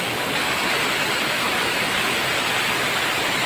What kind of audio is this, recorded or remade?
recorded